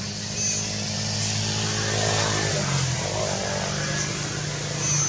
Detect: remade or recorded recorded